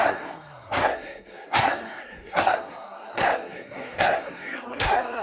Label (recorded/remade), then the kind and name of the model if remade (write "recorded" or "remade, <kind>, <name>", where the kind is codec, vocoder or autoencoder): remade, codec, SNAC